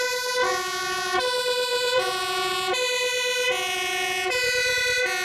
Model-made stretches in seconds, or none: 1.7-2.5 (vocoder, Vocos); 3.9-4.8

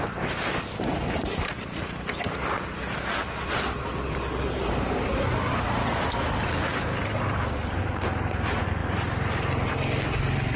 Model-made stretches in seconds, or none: none

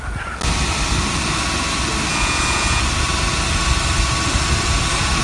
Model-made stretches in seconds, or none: 2.1-2.8 (vocoder, Vocos)

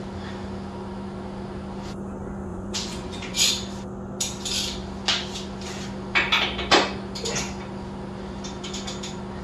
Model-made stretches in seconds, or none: 2.5-3.5 (vocoder, Vocos)

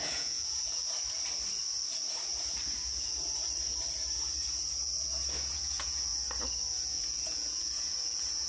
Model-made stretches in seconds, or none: 0.0-0.8 (vocoder, Vocos); 5.5-6.1; 6.7-8.5

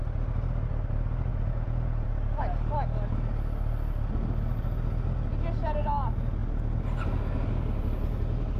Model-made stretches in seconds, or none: 1.3-2.1 (vocoder, Vocos)

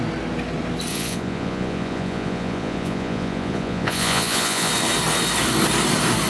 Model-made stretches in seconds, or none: 0.9-4.7 (vocoder, Vocos)

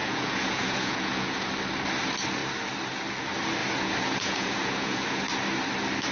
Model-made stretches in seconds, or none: 0.0-1.5 (vocoder, Vocos); 3.6-5.2